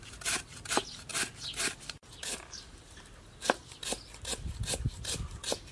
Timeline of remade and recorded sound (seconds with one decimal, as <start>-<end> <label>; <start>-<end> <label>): 0.0-5.7 recorded